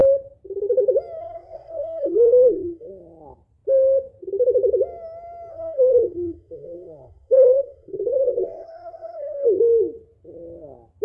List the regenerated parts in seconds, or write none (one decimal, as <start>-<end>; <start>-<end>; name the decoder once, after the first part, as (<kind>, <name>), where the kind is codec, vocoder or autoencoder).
1.2-2.9 (codec, SNAC); 5.5-9.6